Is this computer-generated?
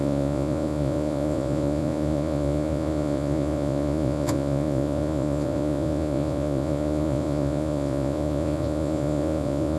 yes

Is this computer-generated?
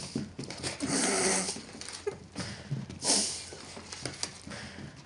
no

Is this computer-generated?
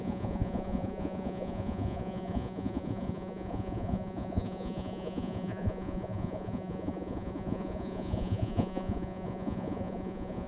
yes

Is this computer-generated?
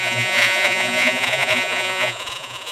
yes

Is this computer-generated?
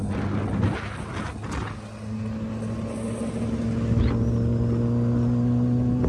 no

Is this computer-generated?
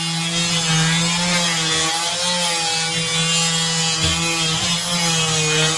no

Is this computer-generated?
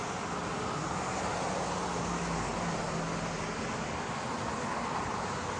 no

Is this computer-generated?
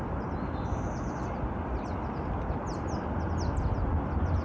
no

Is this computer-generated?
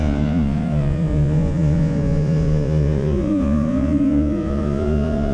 yes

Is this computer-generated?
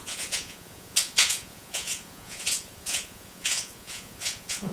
yes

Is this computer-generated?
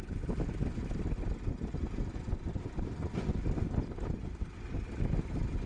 no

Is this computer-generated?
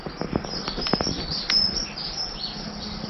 no